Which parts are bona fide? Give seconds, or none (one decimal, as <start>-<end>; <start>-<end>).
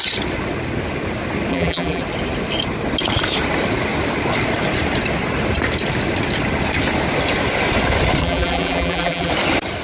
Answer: 0.0-1.5; 2.0-8.2; 9.3-9.8